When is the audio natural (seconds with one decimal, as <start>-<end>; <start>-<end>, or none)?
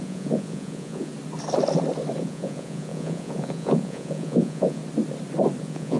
1.1-2.2; 4.8-5.6